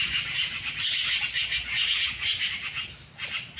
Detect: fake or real real